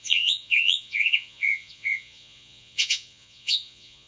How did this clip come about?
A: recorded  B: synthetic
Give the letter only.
B